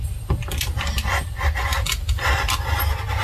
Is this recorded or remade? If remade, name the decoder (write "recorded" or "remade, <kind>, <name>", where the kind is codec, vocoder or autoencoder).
recorded